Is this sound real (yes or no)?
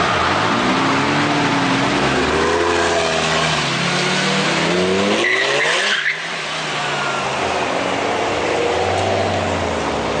yes